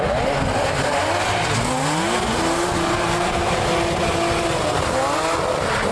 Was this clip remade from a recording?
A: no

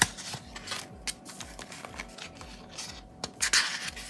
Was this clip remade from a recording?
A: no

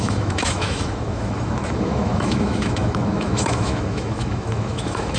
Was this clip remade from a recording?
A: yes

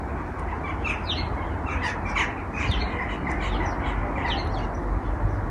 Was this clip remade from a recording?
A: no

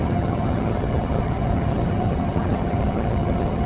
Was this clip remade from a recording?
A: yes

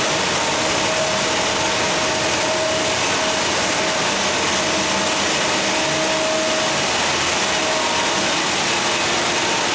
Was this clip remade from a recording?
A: no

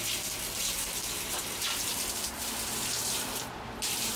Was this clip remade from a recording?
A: yes